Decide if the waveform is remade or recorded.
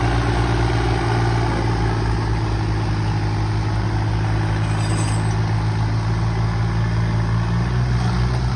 recorded